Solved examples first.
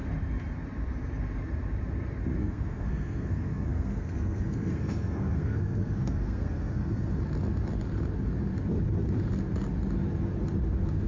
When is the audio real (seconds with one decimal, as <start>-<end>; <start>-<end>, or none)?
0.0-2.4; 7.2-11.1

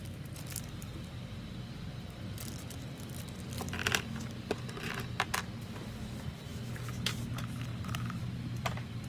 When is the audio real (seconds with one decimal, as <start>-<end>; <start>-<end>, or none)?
0.0-9.1

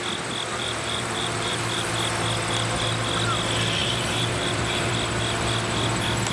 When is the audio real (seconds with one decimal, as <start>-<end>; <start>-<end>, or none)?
0.0-0.5; 1.9-3.8; 4.9-6.3

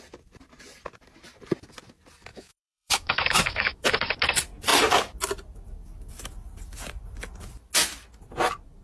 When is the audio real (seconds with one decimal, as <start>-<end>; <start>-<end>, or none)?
0.0-2.3; 3.9-8.8